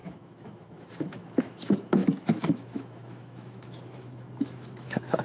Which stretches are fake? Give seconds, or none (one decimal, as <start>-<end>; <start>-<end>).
0.0-5.2